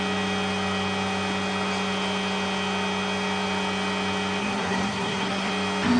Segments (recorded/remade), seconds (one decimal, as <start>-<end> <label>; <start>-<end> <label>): 0.0-4.4 recorded; 4.4-5.5 remade; 5.5-6.0 recorded